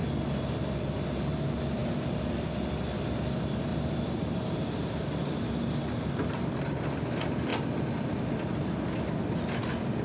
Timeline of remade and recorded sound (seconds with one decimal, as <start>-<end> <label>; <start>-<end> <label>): 0.0-1.8 recorded; 1.8-2.5 remade; 2.5-3.7 recorded; 3.7-6.7 remade; 6.7-10.0 recorded